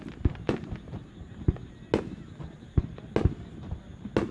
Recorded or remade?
recorded